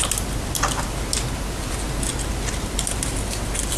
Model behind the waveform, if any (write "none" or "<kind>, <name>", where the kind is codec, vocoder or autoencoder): none